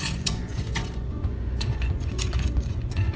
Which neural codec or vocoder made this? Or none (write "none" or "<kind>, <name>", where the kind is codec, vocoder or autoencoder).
vocoder, Vocos